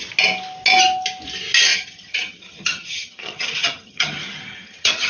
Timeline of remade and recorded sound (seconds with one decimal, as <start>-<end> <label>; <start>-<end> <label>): 0.0-1.7 recorded; 1.7-5.1 remade